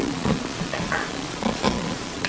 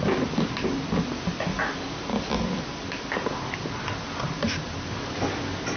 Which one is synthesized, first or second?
first